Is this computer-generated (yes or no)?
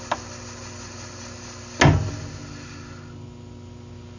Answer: no